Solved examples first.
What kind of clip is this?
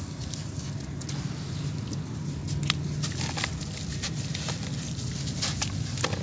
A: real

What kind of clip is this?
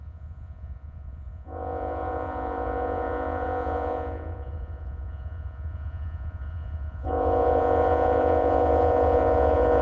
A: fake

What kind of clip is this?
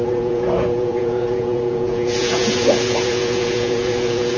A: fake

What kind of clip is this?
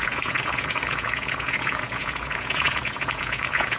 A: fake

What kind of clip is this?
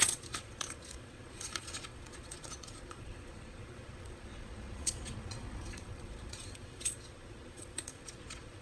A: fake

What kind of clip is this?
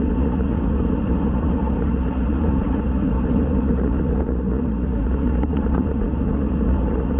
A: fake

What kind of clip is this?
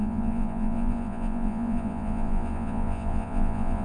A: fake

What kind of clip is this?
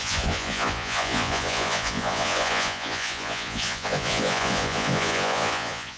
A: fake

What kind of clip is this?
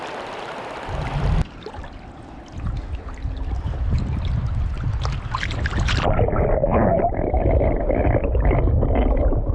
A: real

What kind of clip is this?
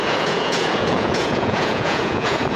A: fake